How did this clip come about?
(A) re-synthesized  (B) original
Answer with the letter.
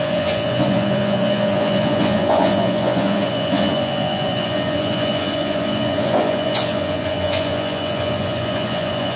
A